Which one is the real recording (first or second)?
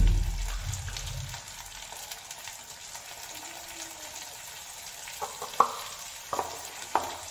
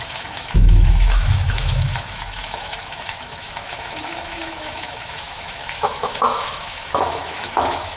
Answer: first